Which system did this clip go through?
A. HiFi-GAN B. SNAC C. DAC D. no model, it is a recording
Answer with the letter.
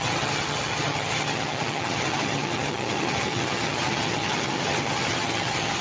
A